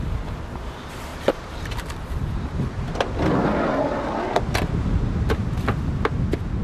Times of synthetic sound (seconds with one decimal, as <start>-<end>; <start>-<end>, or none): 1.1-2.9